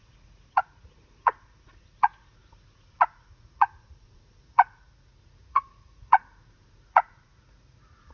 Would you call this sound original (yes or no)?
no